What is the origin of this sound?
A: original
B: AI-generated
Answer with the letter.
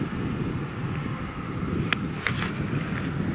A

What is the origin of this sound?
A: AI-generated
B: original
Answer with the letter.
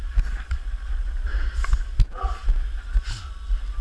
B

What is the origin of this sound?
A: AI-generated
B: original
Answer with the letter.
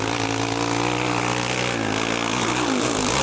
B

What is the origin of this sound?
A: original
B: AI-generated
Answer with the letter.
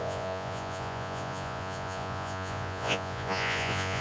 B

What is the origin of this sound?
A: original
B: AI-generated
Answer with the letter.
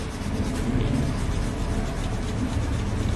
A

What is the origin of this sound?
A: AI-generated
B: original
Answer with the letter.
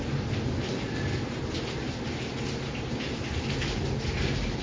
B